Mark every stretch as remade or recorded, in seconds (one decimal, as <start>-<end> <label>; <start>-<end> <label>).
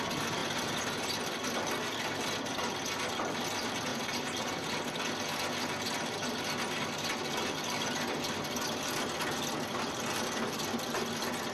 0.0-3.9 recorded; 3.9-4.7 remade; 4.7-11.5 recorded